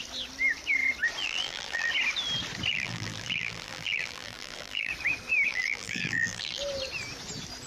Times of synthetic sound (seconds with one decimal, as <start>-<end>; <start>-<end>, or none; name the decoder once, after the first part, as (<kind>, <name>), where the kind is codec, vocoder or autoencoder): 1.2-1.9 (vocoder, BigVGAN v2); 2.7-4.9; 5.5-6.6

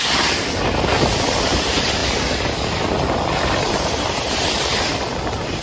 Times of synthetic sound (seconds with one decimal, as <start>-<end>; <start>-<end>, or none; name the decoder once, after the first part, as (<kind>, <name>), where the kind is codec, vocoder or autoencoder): none

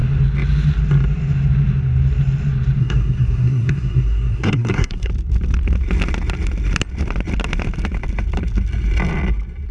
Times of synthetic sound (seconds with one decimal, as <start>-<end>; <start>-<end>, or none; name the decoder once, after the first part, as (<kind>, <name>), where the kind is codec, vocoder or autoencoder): 2.8-5.1 (codec, SNAC)

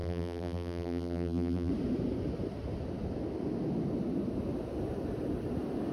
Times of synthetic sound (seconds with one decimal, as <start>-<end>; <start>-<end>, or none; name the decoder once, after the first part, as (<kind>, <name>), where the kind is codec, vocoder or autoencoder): 0.0-1.7 (vocoder, BigVGAN v2)

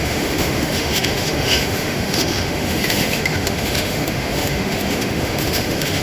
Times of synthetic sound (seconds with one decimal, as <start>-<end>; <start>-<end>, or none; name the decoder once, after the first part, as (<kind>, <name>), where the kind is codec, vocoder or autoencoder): 0.0-6.0 (autoencoder, DAC-VAE)

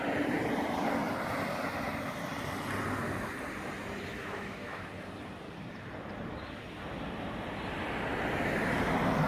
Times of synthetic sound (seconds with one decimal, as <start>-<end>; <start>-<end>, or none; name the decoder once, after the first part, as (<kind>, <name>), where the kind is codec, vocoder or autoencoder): 4.1-4.8 (autoencoder, DAC-VAE)

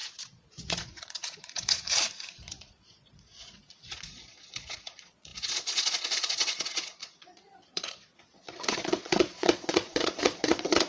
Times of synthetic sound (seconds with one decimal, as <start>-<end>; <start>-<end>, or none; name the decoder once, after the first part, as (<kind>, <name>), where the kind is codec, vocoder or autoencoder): 0.0-1.8 (vocoder, Vocos); 2.3-10.9

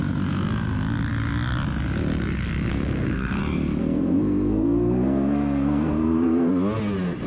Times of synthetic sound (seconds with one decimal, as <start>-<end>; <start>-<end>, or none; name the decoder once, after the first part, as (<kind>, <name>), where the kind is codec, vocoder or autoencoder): 2.7-3.4 (codec, SNAC); 3.8-6.5